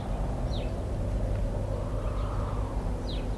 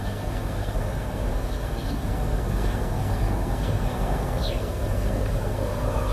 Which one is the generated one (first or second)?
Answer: second